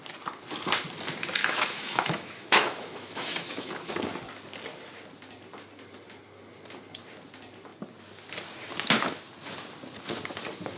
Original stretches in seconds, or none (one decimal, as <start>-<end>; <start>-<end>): 0.0-1.4; 3.9-10.8